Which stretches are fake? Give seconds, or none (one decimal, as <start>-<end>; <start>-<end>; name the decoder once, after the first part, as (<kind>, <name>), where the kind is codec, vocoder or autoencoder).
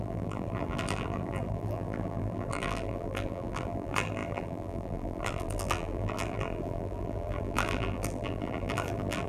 0.0-9.3 (vocoder, BigVGAN v2)